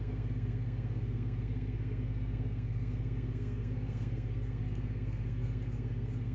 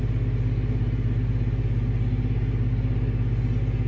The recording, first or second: second